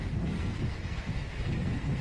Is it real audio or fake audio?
fake